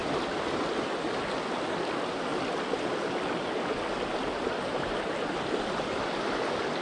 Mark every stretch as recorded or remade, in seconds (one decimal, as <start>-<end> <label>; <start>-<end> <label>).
0.0-1.2 remade; 1.2-6.8 recorded